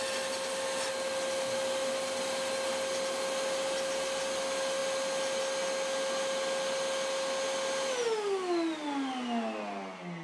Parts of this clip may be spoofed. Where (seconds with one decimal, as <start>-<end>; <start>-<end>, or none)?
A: none